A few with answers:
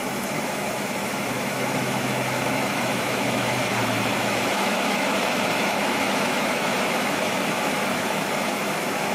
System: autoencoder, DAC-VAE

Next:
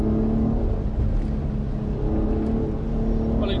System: none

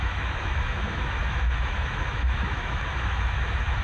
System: autoencoder, DAC-VAE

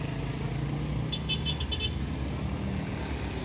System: none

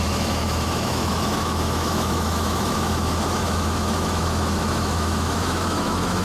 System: autoencoder, DAC-VAE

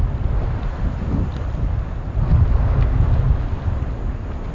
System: none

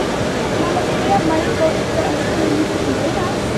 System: none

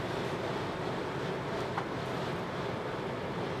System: none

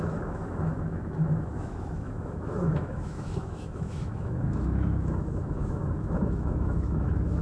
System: autoencoder, DAC-VAE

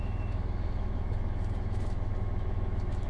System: autoencoder, DAC-VAE